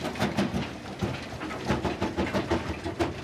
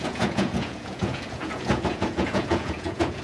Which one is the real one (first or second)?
first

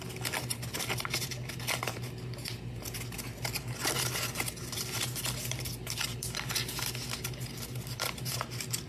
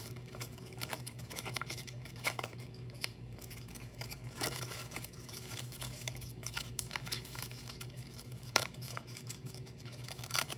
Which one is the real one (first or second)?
first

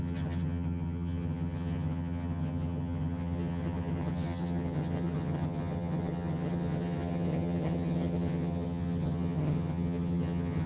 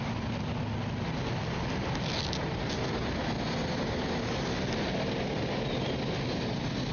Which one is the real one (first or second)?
second